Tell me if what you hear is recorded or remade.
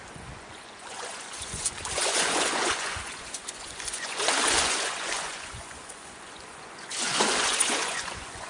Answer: remade